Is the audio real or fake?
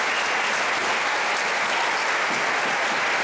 real